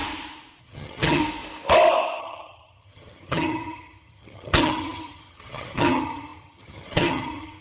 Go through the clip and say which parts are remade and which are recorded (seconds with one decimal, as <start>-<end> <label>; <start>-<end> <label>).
0.0-0.6 recorded; 0.6-1.2 remade; 1.2-2.2 recorded; 2.2-7.6 remade